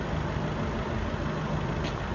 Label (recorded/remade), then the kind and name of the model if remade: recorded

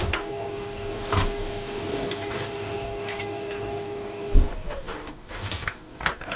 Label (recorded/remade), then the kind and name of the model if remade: remade, codec, DAC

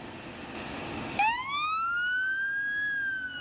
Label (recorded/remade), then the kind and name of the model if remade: recorded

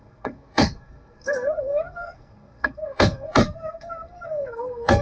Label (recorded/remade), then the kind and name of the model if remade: remade, codec, SNAC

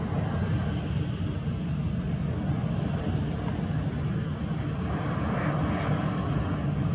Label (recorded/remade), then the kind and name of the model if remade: recorded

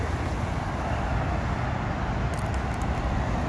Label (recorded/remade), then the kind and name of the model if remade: recorded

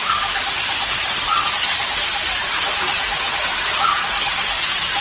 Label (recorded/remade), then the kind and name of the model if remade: recorded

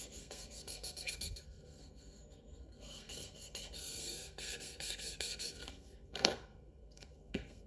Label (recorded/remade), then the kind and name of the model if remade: remade, codec, SNAC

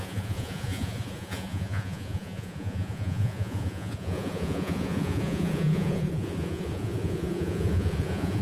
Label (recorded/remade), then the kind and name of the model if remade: remade, vocoder, Vocos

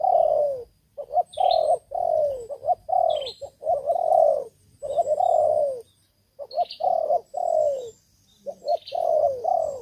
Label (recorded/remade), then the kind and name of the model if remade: recorded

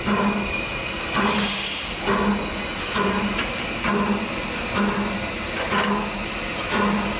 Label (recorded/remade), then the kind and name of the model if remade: recorded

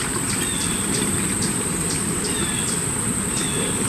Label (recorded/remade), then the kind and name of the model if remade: recorded